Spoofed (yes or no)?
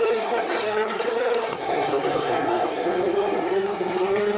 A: yes